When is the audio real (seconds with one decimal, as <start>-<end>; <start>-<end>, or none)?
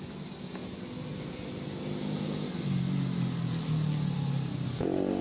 0.0-5.2